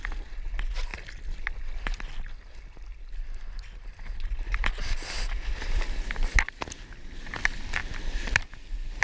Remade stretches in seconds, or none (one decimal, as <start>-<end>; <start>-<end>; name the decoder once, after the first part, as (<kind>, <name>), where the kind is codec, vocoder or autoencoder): none